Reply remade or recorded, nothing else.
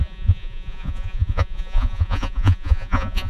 remade